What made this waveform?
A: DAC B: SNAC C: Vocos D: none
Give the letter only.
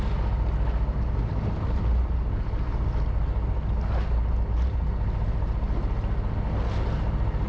D